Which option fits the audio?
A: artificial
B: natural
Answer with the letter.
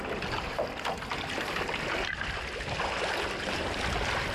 B